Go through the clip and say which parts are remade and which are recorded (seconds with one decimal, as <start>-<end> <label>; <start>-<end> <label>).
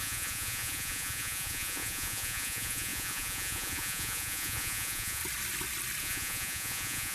0.0-5.2 remade; 5.2-6.0 recorded; 6.0-7.1 remade